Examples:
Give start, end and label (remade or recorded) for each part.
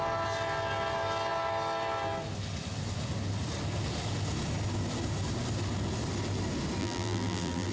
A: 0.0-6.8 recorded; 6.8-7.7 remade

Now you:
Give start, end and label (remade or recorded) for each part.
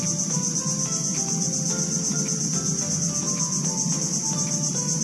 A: 0.0-5.0 recorded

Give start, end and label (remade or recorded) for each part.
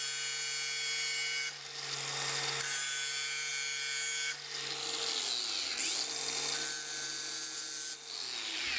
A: 0.0-8.8 recorded